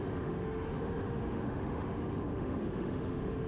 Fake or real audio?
fake